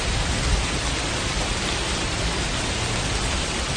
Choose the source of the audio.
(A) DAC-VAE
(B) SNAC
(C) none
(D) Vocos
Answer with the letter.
C